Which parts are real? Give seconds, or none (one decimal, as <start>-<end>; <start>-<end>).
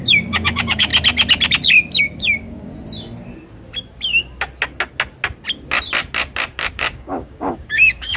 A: 0.9-2.0; 2.7-6.7